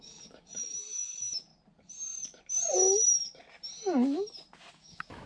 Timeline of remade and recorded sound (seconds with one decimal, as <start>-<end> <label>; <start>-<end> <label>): 0.0-1.5 remade; 1.5-4.7 recorded; 4.7-5.3 remade